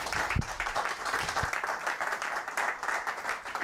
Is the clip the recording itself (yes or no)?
no